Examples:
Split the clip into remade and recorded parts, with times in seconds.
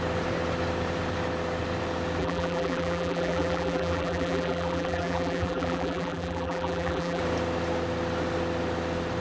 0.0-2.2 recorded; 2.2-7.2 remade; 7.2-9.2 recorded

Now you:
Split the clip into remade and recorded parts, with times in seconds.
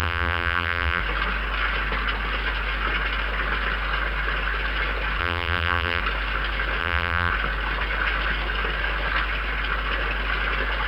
0.0-1.0 remade; 1.0-5.2 recorded; 5.2-6.0 remade; 6.0-6.8 recorded; 6.8-7.3 remade; 7.3-10.9 recorded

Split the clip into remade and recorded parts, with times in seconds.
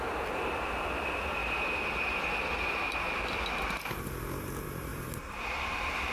0.0-4.9 recorded; 4.9-6.1 remade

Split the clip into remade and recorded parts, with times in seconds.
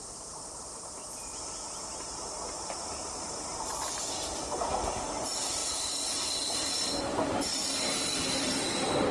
0.0-1.0 remade; 1.0-2.1 recorded; 2.1-7.5 remade; 7.5-8.2 recorded; 8.2-9.1 remade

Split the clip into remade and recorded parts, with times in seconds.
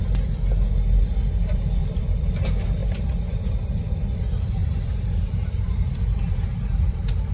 0.0-1.8 recorded; 1.8-2.3 remade; 2.3-4.6 recorded; 4.6-7.3 remade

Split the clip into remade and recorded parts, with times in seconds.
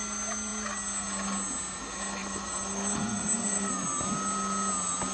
0.0-2.2 recorded; 2.2-3.7 remade; 3.7-5.1 recorded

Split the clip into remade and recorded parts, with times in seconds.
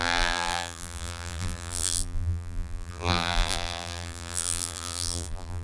0.0-5.6 remade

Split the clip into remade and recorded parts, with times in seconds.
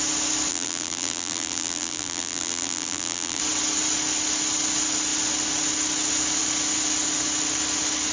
0.0-0.5 recorded; 0.5-3.4 remade; 3.4-8.1 recorded